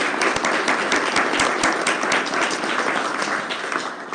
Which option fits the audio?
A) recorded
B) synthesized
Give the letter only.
A